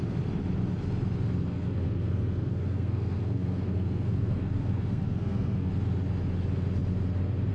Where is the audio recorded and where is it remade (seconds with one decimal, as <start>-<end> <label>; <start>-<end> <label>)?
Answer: 0.0-1.5 recorded; 1.5-5.7 remade; 5.7-7.5 recorded